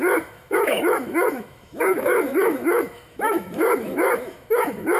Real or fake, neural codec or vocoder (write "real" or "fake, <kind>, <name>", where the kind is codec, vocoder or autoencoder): fake, autoencoder, DAC-VAE